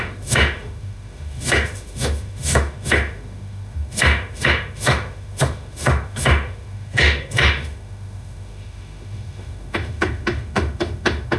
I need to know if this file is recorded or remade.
remade